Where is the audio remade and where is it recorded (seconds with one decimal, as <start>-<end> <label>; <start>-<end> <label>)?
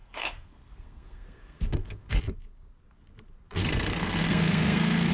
0.0-2.2 remade; 2.2-3.6 recorded; 3.6-5.1 remade